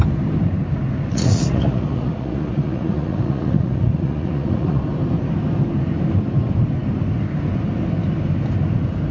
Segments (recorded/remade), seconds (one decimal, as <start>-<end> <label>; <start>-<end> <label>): 0.0-1.1 recorded; 1.1-4.8 remade; 4.8-9.1 recorded